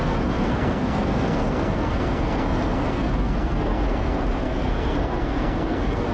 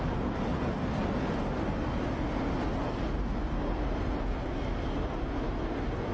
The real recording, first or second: second